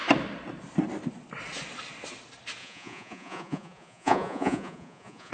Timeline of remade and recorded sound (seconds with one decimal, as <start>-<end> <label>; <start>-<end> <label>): 0.0-2.6 recorded; 2.6-5.3 remade